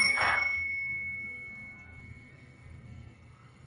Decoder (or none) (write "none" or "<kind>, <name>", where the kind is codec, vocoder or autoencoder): codec, SNAC